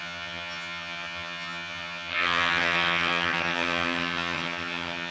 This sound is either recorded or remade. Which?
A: remade